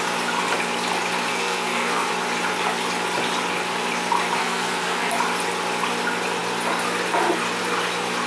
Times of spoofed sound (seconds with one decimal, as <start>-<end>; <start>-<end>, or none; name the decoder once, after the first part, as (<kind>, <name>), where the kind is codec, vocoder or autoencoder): 1.3-2.1 (codec, SNAC); 4.4-5.1

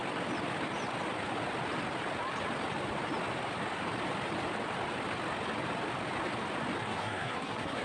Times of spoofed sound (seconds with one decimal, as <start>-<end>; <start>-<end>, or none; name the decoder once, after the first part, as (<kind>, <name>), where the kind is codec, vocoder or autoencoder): 6.8-7.8 (codec, SNAC)

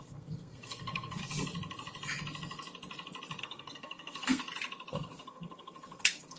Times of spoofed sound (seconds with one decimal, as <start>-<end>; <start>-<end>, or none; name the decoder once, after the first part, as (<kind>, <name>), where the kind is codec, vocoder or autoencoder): 0.0-1.2 (codec, SNAC); 3.4-4.4; 4.9-6.4